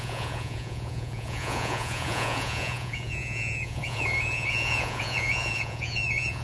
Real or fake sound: fake